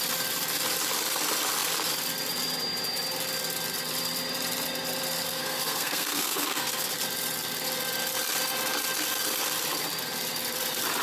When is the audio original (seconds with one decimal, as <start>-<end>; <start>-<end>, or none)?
0.0-5.3; 6.9-11.0